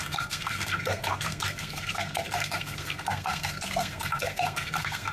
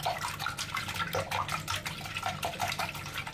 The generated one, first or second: first